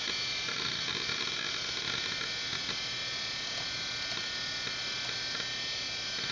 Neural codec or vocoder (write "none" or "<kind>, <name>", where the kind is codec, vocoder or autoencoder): none